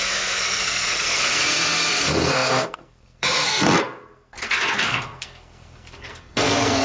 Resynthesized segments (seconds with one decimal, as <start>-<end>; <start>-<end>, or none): 0.0-6.8